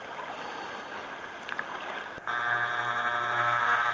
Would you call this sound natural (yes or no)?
yes